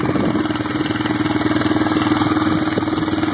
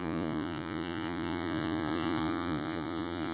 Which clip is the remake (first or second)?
second